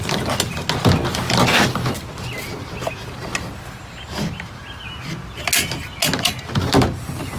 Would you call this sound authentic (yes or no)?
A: yes